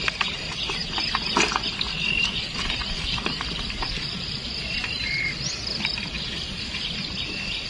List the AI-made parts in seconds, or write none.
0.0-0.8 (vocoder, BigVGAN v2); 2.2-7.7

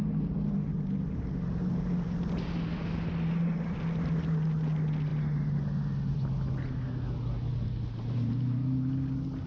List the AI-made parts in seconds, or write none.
none

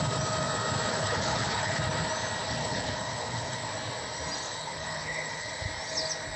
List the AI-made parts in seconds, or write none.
0.9-1.8 (codec, HILCodec); 2.6-3.7; 4.5-5.5